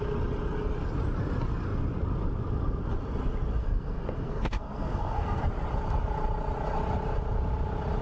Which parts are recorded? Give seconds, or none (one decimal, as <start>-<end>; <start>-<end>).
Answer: 0.0-3.6; 5.4-8.0